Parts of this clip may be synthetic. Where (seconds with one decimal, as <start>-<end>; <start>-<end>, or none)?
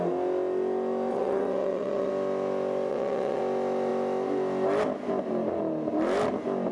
1.1-2.1; 2.9-3.4